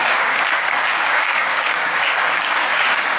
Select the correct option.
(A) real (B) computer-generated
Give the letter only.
B